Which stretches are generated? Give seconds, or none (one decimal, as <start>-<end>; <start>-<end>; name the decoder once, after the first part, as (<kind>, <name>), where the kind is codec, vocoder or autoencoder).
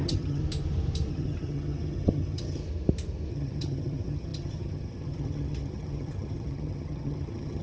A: 0.0-0.4 (vocoder, HiFi-GAN); 1.1-2.6; 3.3-7.6